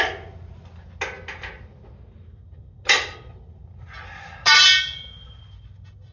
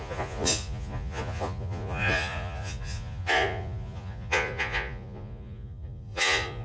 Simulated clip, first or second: second